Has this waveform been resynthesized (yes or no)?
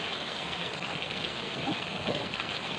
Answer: yes